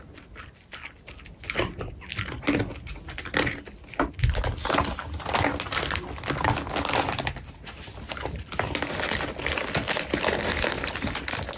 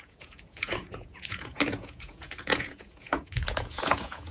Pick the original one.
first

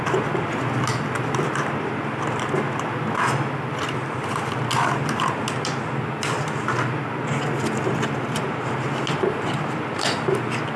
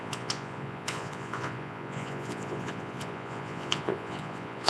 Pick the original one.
first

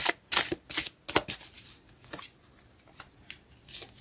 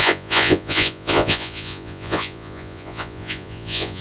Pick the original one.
first